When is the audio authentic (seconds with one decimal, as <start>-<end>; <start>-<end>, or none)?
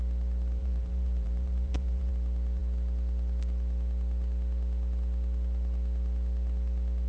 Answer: 0.0-0.6; 2.1-7.1